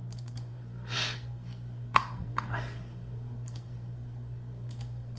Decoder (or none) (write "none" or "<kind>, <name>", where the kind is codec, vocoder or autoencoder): codec, SNAC